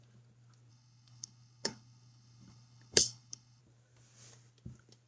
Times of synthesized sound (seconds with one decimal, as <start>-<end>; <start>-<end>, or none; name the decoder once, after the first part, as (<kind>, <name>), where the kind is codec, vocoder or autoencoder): 0.7-3.6 (codec, HILCodec)